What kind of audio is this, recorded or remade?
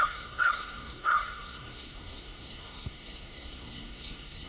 remade